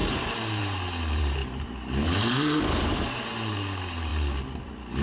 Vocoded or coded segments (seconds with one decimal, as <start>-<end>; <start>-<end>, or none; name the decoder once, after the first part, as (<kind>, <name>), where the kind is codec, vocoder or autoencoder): 0.6-4.1 (vocoder, BigVGAN v2)

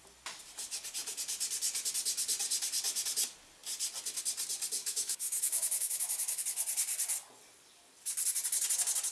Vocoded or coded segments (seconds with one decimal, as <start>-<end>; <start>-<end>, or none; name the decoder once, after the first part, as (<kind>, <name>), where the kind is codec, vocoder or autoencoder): 4.8-6.4 (autoencoder, DAC-VAE)

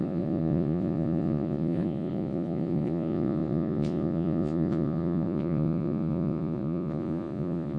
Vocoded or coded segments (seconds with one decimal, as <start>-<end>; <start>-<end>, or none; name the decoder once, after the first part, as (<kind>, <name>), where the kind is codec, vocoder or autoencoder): 0.0-7.8 (vocoder, Vocos)